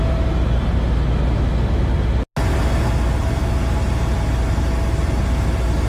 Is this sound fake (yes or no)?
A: no